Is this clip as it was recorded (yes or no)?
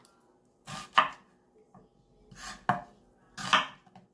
yes